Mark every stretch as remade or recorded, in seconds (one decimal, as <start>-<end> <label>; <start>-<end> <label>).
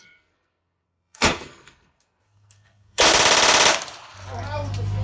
0.0-3.0 remade; 3.0-5.0 recorded